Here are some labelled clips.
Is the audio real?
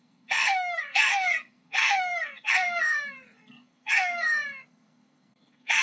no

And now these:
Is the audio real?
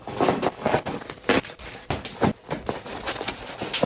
yes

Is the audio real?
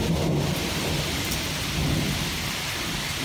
yes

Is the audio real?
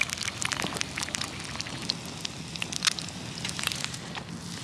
yes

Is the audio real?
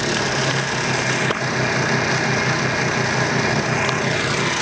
yes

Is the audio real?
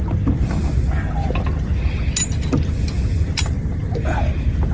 yes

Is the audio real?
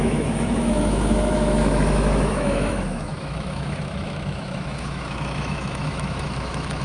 no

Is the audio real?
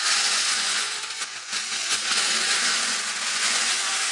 no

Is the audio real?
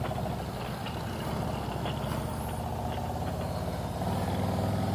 yes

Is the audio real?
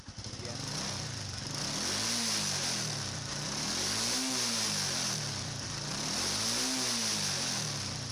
yes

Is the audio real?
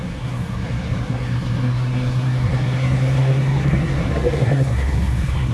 no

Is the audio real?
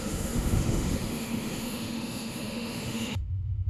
no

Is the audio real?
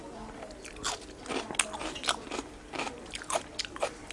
yes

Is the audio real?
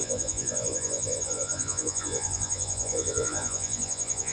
no